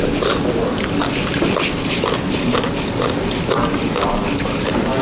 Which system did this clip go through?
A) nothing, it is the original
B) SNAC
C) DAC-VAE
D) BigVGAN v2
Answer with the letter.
A